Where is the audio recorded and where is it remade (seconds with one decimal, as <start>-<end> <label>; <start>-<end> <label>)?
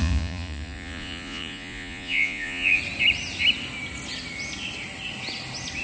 0.0-2.8 remade; 2.8-5.8 recorded